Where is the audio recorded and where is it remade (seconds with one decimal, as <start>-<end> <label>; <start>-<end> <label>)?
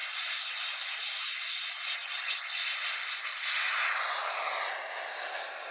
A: 0.0-5.7 recorded